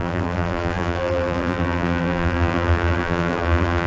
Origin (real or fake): fake